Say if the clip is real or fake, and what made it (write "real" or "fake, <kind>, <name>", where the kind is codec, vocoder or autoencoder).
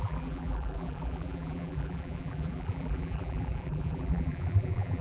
fake, vocoder, BigVGAN v2